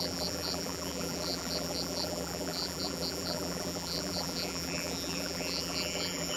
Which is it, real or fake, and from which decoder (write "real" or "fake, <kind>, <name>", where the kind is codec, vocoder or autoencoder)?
fake, vocoder, BigVGAN v2